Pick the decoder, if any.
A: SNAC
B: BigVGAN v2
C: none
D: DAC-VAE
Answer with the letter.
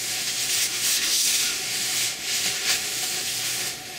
D